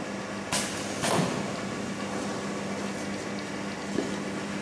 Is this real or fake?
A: real